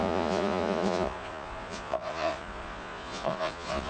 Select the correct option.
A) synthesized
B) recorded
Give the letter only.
A